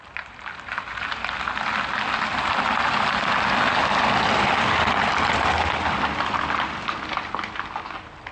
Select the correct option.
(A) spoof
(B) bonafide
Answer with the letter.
B